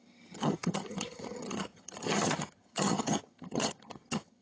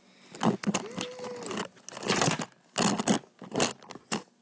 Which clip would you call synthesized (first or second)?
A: first